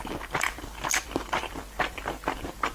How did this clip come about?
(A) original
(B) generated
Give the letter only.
B